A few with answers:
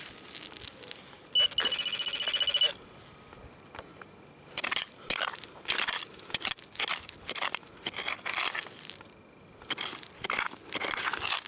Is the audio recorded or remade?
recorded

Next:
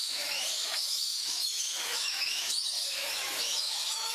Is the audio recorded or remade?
remade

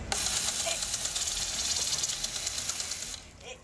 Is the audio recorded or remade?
recorded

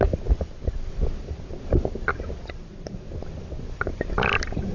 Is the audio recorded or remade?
recorded